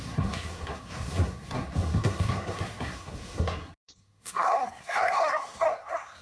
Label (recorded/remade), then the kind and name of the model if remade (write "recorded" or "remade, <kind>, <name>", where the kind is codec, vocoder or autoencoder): remade, codec, SNAC